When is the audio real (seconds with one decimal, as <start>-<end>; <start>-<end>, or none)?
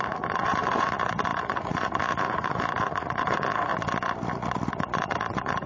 3.7-4.7